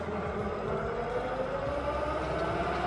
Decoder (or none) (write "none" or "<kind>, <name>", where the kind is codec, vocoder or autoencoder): none